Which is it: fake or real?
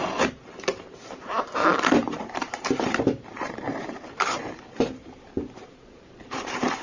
fake